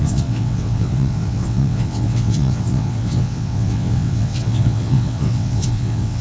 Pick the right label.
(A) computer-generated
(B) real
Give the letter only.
A